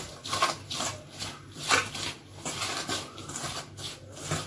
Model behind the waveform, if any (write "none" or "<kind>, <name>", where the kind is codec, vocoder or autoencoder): none